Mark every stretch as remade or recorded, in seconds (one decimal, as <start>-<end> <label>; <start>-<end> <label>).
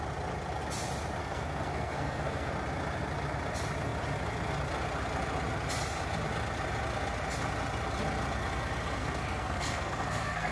0.0-1.2 recorded; 1.2-2.5 remade; 2.5-9.0 recorded; 9.0-10.5 remade